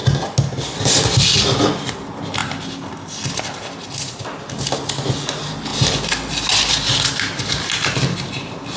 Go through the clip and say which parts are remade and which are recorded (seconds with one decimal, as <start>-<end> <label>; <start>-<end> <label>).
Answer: 0.0-8.8 recorded